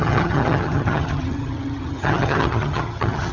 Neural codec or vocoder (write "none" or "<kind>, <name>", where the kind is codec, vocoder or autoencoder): vocoder, HiFi-GAN